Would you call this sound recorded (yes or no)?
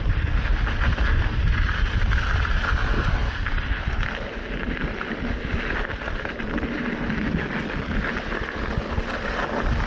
yes